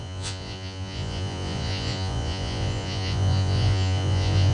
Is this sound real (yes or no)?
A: no